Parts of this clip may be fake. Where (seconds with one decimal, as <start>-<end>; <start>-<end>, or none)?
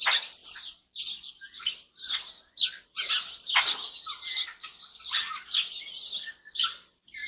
none